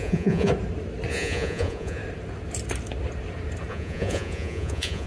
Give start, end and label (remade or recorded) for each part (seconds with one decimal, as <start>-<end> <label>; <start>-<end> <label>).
0.0-0.5 remade; 0.5-1.1 recorded; 1.1-2.0 remade; 2.0-3.7 recorded; 3.7-5.1 remade

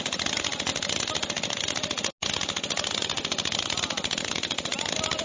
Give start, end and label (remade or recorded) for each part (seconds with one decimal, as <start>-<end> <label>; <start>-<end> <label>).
0.0-5.2 recorded

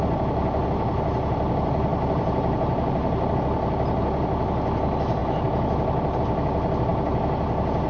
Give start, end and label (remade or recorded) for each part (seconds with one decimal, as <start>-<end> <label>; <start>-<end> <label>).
0.0-1.9 recorded; 1.9-3.3 remade; 3.3-7.9 recorded